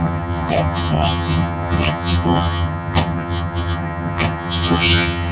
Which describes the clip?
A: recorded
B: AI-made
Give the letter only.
B